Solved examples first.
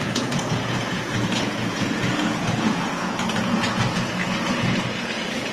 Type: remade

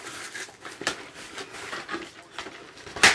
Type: recorded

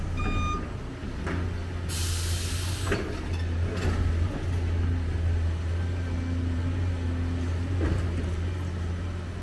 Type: recorded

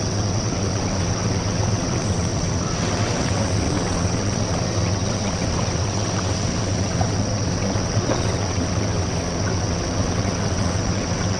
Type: remade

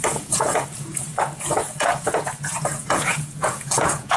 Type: remade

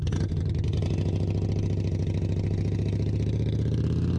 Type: recorded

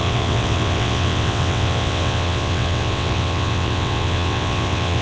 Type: remade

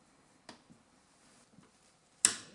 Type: recorded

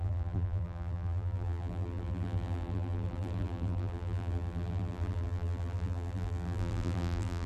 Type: remade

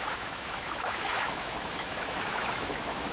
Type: remade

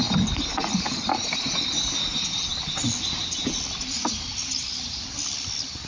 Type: recorded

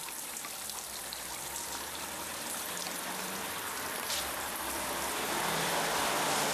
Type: remade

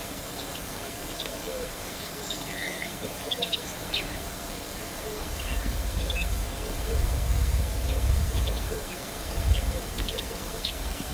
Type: remade